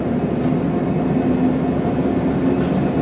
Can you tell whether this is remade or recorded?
recorded